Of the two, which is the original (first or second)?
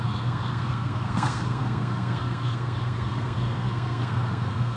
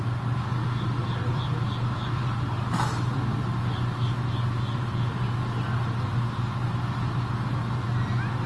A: second